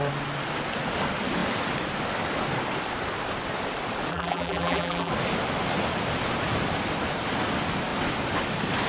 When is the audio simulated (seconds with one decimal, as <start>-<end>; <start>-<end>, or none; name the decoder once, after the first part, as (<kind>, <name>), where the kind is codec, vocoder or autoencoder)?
4.1-5.1 (vocoder, BigVGAN v2)